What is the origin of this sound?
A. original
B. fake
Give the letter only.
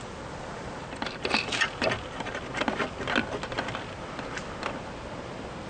A